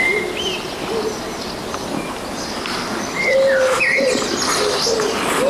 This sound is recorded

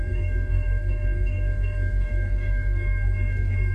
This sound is remade